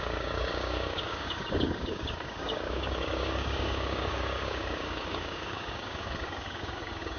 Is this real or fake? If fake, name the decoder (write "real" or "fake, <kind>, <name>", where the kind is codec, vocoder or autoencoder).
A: fake, codec, DAC